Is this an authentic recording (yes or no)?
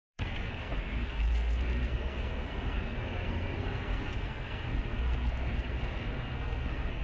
no